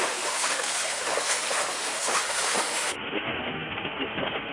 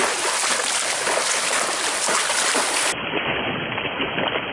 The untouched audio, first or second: second